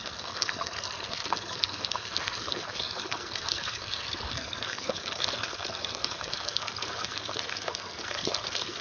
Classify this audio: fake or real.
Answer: fake